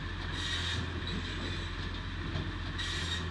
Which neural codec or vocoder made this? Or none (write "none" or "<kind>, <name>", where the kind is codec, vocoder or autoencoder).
none